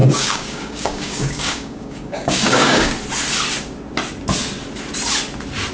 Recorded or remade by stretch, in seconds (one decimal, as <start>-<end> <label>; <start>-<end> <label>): 0.0-2.9 remade; 2.9-5.7 recorded